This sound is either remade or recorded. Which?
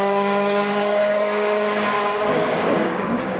remade